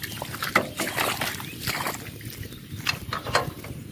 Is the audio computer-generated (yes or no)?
no